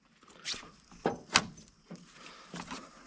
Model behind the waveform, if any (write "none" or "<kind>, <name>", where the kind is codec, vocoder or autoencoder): none